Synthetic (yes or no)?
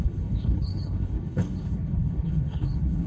yes